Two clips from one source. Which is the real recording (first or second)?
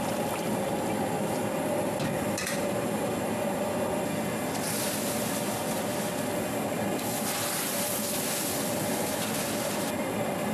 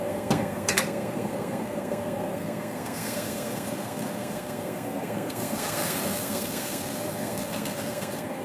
first